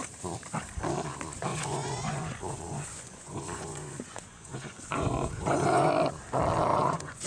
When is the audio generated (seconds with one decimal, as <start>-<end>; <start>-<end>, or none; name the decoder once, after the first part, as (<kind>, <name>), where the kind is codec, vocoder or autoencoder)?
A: 1.5-5.9 (vocoder, Vocos); 6.7-7.3